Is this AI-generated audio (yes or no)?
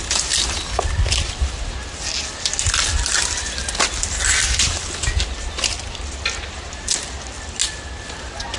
no